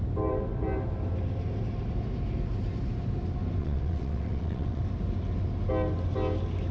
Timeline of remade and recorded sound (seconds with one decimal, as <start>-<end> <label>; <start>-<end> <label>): 0.0-3.6 recorded; 3.6-4.8 remade; 4.8-6.7 recorded